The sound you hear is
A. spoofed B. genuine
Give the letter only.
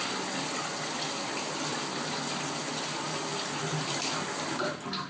B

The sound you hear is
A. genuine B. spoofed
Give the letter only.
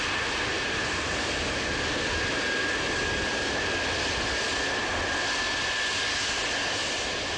A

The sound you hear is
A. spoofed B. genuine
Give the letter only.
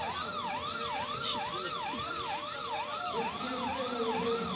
B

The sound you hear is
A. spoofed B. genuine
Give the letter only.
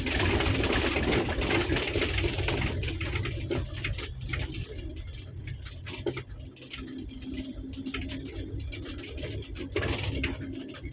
B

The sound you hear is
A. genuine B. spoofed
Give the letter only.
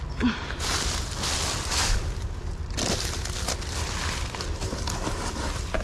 B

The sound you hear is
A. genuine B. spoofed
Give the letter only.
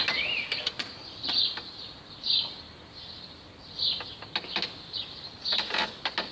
A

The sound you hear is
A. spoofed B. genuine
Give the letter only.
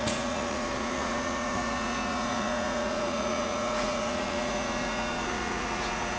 A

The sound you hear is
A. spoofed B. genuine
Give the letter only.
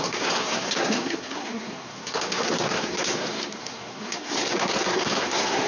A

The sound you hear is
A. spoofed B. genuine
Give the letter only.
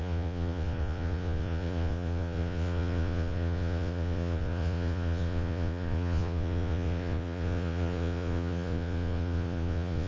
A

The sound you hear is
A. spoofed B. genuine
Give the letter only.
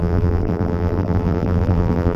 A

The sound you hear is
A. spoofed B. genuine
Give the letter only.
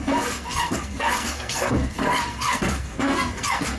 A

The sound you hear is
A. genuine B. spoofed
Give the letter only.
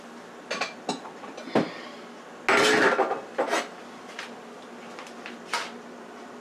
A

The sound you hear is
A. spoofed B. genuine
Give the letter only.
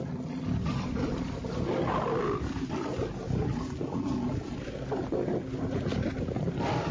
B